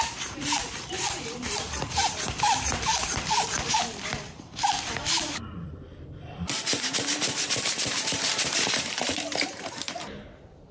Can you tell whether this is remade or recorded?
remade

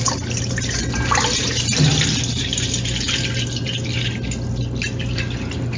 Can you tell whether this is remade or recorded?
recorded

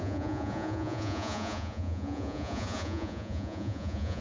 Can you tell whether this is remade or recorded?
remade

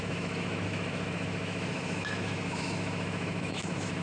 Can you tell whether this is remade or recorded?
remade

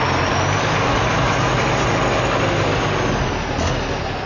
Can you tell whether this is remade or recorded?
recorded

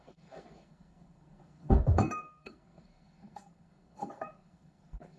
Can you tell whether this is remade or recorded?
remade